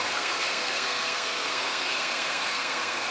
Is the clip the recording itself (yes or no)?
no